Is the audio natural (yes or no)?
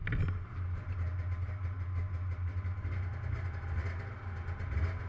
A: yes